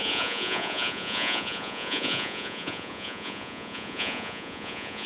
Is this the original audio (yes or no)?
no